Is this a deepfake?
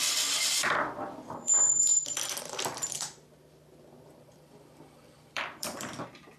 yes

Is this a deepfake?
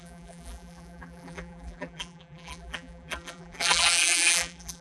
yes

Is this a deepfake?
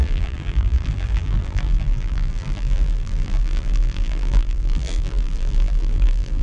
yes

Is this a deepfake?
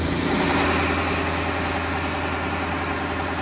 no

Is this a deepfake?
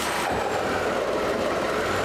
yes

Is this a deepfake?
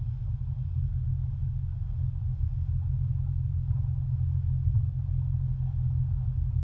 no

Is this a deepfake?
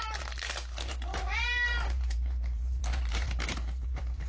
yes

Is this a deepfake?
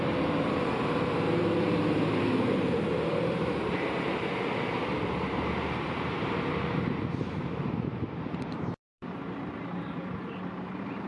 yes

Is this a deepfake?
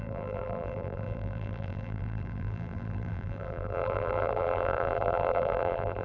yes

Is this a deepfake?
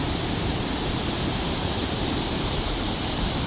yes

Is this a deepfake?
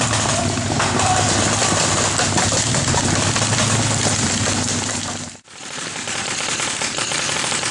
yes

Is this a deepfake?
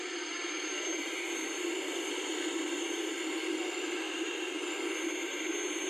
yes